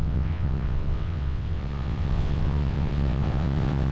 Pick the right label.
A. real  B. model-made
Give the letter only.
B